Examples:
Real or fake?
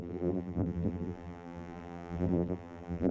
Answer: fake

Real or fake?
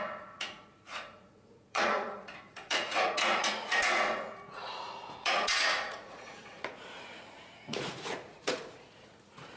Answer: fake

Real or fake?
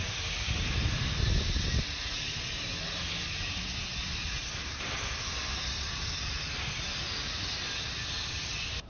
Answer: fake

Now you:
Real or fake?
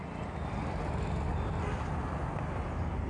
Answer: real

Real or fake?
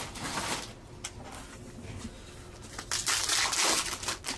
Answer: real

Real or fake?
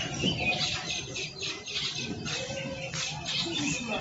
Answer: fake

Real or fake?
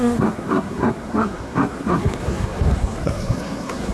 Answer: fake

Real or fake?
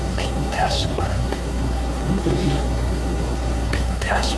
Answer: fake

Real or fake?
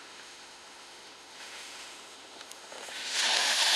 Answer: fake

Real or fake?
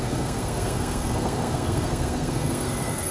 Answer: fake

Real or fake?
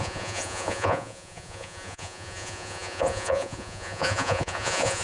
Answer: fake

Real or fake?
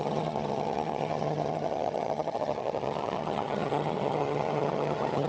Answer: fake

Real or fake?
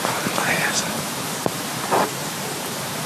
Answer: fake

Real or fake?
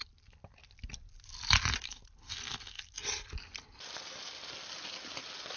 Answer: real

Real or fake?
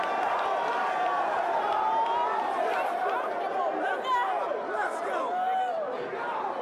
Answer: real